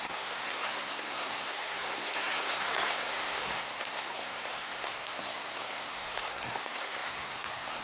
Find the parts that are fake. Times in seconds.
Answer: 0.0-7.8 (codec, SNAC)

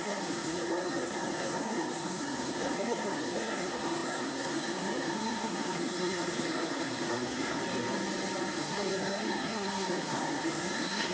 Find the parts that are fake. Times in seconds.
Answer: 0.0-7.6 (codec, SNAC); 8.6-11.1

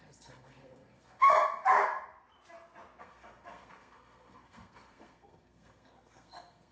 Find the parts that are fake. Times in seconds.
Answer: 0.0-1.3 (codec, SNAC); 3.0-6.7

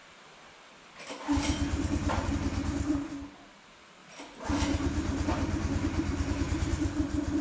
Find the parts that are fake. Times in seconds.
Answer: none

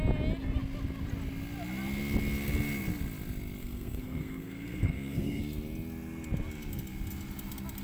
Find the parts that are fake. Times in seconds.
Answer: 3.6-5.4 (codec, SNAC)

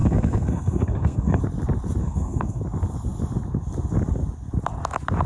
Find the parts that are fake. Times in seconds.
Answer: 0.0-1.4 (codec, SNAC); 2.0-2.6

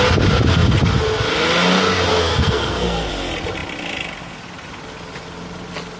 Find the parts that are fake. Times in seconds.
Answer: 2.1-3.1 (codec, SNAC)